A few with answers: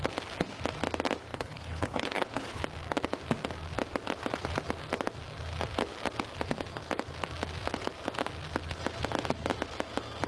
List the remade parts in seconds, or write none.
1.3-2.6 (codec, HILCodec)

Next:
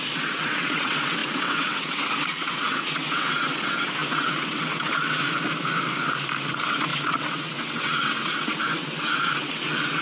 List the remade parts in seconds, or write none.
0.0-5.2 (vocoder, WaveNeXt); 6.5-10.0